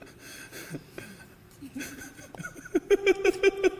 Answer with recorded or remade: remade